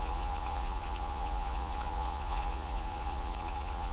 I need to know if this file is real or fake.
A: fake